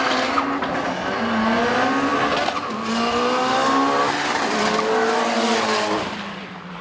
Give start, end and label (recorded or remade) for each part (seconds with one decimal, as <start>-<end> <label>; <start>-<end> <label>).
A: 0.0-6.8 recorded